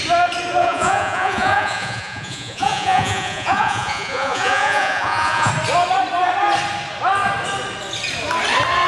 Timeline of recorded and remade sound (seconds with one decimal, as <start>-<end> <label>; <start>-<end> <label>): 0.0-0.6 recorded; 0.6-5.5 remade; 5.5-8.9 recorded